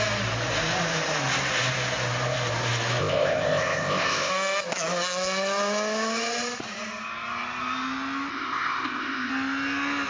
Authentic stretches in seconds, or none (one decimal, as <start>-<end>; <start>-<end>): 0.0-3.0; 4.3-8.3; 9.3-10.1